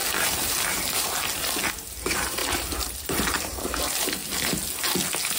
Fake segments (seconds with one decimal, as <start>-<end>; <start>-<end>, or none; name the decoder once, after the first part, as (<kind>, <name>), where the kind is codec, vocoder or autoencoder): 2.4-3.7 (vocoder, BigVGAN v2)